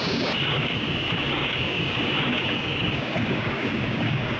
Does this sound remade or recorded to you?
remade